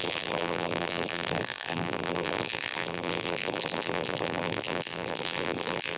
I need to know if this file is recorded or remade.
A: remade